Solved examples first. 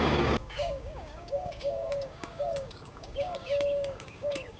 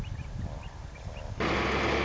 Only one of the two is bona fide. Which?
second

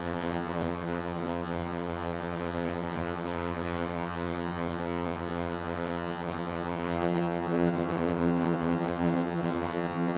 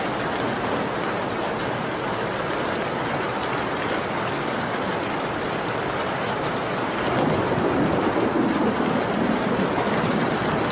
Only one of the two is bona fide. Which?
second